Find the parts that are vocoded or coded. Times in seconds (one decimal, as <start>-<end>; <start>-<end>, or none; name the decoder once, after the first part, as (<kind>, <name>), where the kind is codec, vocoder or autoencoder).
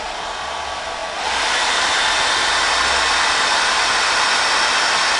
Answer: none